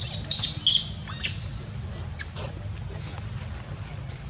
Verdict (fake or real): real